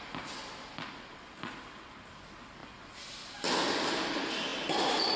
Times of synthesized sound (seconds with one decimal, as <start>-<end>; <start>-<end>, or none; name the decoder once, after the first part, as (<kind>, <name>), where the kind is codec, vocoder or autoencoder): none

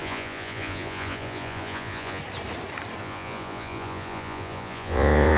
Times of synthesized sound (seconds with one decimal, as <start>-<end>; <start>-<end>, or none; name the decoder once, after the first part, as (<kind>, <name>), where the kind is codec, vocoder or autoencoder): 0.0-2.2 (vocoder, Vocos); 3.0-5.4